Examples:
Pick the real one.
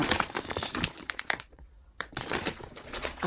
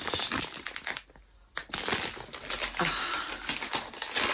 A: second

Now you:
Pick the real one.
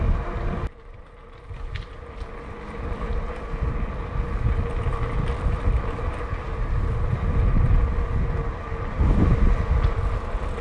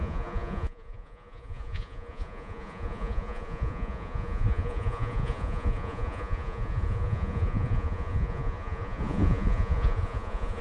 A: first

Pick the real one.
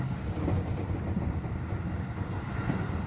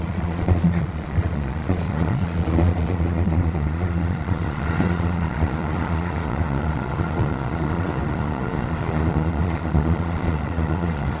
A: first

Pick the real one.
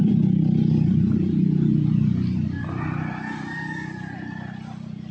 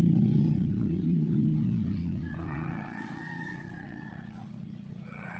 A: first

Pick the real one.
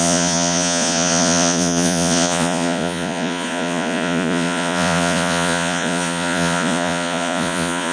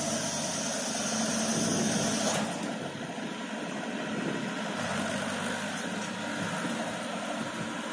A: second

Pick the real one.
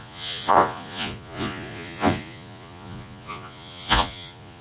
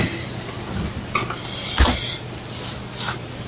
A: second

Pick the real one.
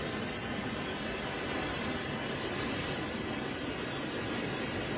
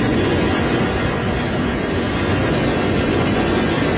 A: first